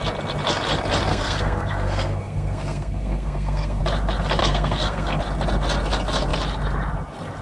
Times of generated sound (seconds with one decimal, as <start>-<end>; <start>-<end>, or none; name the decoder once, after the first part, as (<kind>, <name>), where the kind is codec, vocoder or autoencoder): 1.1-3.8 (codec, SNAC); 4.4-5.2